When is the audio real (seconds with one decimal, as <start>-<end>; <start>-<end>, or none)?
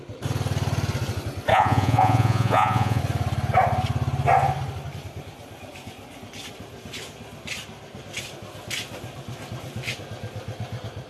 0.0-1.5; 3.0-11.1